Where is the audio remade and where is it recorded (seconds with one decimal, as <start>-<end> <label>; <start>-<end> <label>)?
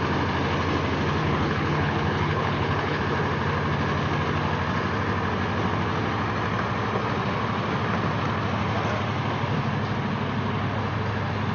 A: 0.0-1.2 recorded; 1.2-3.0 remade; 3.0-11.5 recorded